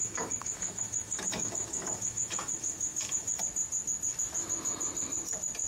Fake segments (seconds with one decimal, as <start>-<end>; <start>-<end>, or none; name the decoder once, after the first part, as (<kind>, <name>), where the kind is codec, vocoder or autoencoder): 0.0-3.4 (autoencoder, DAC-VAE)